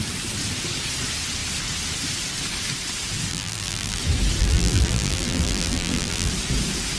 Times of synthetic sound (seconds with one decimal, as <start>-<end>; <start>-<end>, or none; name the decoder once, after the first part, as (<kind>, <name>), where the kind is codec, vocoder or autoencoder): 3.3-4.0 (vocoder, BigVGAN v2); 4.4-6.3